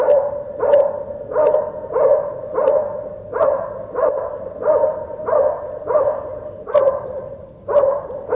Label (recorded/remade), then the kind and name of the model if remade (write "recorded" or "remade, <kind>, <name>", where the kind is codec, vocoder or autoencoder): recorded